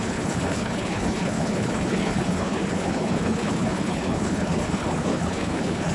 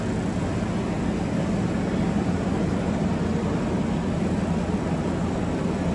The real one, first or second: second